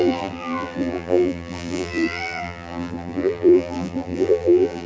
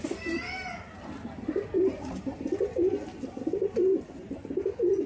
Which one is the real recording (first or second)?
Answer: second